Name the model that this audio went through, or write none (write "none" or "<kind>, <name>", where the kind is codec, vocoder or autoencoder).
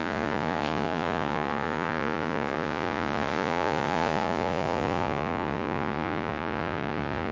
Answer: vocoder, Vocos